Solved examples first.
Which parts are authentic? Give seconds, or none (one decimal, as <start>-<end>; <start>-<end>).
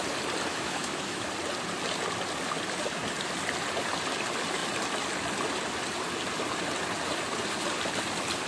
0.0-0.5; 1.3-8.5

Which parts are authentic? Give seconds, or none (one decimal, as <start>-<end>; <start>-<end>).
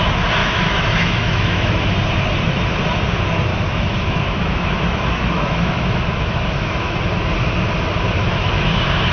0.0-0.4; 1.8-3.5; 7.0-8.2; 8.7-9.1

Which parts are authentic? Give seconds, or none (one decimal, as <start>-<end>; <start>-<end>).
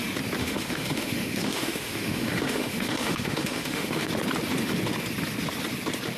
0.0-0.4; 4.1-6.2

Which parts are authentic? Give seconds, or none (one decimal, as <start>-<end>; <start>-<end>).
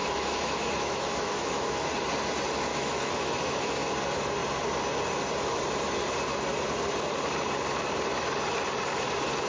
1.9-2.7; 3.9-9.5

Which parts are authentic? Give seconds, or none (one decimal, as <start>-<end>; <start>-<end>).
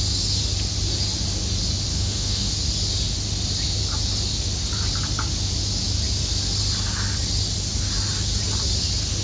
0.0-1.9; 2.5-9.2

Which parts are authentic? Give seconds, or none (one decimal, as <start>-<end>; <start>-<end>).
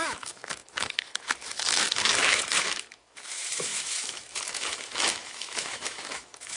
none